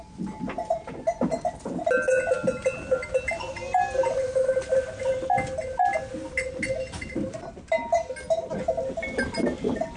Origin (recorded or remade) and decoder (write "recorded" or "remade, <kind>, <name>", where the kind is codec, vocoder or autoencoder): recorded